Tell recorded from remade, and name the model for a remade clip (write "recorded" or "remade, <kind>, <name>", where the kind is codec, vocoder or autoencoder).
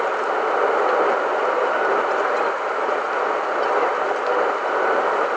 recorded